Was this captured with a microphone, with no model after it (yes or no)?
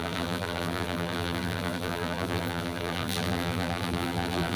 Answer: no